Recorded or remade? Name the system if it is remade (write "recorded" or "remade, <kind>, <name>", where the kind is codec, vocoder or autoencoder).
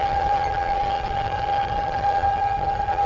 remade, vocoder, HiFi-GAN